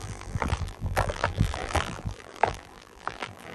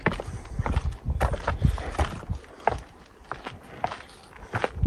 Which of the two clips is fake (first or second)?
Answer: first